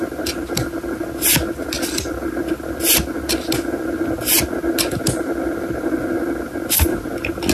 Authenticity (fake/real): real